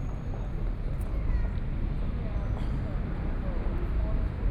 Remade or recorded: recorded